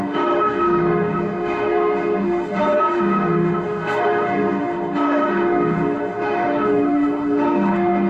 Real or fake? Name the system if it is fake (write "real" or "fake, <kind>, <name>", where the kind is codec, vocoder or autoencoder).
fake, autoencoder, DAC-VAE